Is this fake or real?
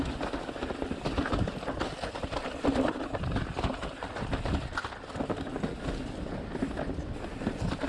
real